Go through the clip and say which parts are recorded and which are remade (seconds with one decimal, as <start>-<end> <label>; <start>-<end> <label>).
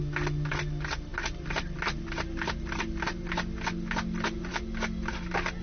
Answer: 0.0-5.6 recorded